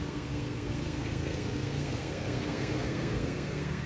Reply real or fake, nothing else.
fake